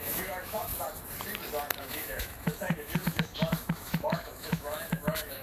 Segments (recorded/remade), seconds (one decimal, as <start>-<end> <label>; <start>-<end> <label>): 0.0-0.7 remade; 0.7-1.8 recorded; 1.8-5.4 remade